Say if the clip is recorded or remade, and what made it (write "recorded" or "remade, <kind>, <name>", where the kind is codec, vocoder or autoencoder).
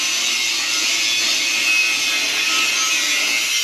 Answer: recorded